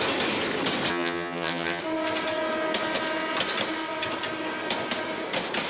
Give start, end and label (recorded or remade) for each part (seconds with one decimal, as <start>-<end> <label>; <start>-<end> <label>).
0.0-0.9 recorded; 0.9-1.8 remade; 1.8-5.7 recorded